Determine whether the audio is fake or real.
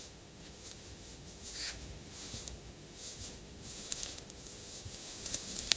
fake